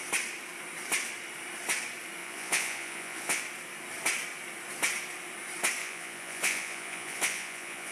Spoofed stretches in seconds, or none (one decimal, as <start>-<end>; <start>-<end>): 2.2-3.4; 5.8-7.9